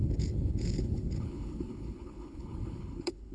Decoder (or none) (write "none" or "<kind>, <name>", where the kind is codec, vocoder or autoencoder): codec, HILCodec